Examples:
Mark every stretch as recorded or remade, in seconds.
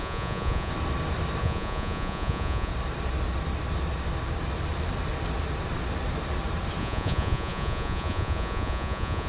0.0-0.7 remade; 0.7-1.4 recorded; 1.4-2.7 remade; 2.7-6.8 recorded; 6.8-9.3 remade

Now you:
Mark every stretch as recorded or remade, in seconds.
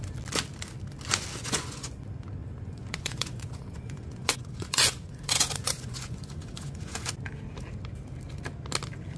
0.0-1.4 recorded; 1.4-2.0 remade; 2.0-2.4 recorded; 2.4-7.1 remade; 7.1-9.2 recorded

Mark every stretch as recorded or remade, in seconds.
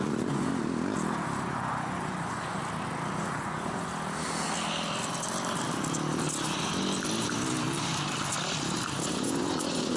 0.0-0.5 remade; 0.5-1.4 recorded; 1.4-2.6 remade; 2.6-3.2 recorded; 3.2-3.9 remade; 3.9-9.1 recorded; 9.1-10.0 remade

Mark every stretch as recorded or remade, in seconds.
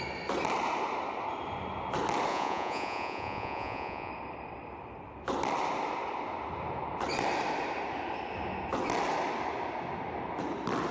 0.0-2.3 recorded; 2.3-4.1 remade; 4.1-10.9 recorded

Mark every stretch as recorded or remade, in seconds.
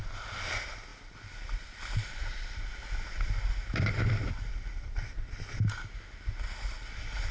0.0-7.3 recorded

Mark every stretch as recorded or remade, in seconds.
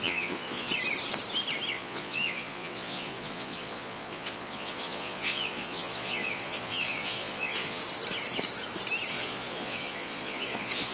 0.0-0.7 remade; 0.7-1.7 recorded; 1.7-7.8 remade; 7.8-9.1 recorded; 9.1-10.9 remade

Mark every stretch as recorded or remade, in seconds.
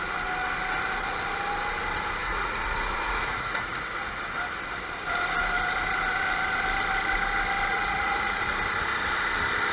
0.0-2.2 recorded; 2.2-4.2 remade; 4.2-7.7 recorded; 7.7-8.4 remade; 8.4-9.7 recorded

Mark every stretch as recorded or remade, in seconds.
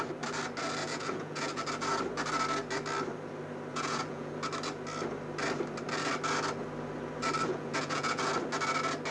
0.0-0.8 recorded; 0.8-1.6 remade; 1.6-3.7 recorded; 3.7-4.3 remade; 4.3-7.5 recorded; 7.5-8.2 remade; 8.2-9.1 recorded